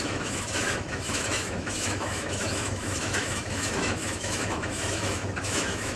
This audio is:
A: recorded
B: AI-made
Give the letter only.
B